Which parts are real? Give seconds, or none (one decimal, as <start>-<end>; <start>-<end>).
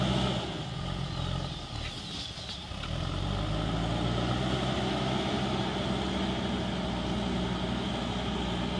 0.0-8.8